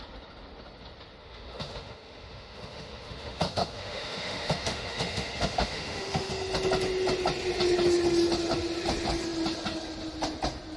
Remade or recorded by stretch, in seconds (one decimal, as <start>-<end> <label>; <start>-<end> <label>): 0.0-1.2 recorded; 1.2-6.3 remade; 6.3-10.8 recorded